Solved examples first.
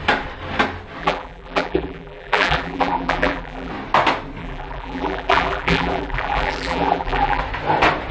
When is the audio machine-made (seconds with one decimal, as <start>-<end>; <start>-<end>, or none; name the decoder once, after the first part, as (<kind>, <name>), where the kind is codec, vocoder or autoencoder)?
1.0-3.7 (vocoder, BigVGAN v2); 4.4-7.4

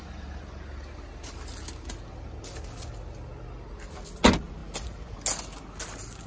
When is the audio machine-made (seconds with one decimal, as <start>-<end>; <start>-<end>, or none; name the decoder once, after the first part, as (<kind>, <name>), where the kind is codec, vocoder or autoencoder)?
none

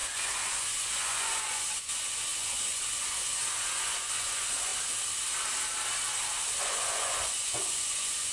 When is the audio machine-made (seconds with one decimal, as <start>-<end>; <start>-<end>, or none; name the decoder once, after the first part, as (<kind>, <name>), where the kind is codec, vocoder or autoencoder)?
0.0-4.7 (vocoder, Vocos); 6.6-8.3